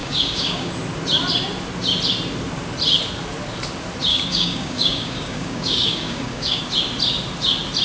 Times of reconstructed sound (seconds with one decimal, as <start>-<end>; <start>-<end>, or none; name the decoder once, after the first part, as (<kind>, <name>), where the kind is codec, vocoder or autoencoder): 0.0-0.7 (codec, DAC); 4.1-6.6